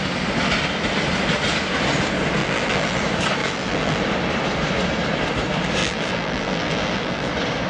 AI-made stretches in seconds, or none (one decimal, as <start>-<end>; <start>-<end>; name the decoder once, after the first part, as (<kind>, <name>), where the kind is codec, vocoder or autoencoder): 2.4-3.0 (vocoder, BigVGAN v2); 3.4-4.0; 5.8-7.3